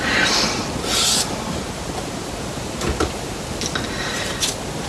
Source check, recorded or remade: recorded